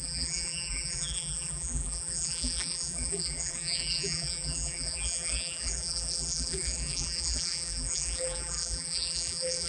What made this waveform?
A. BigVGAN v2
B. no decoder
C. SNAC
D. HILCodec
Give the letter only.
A